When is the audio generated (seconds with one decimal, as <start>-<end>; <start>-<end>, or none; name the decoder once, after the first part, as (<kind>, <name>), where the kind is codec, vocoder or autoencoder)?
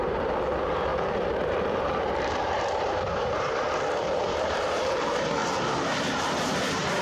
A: 0.0-5.4 (vocoder, BigVGAN v2); 6.2-7.0